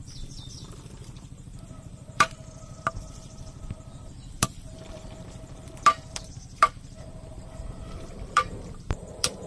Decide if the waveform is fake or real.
fake